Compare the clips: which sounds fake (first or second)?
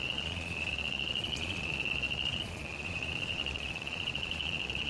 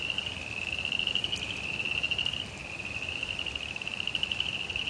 first